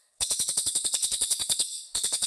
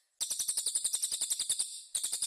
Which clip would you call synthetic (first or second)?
first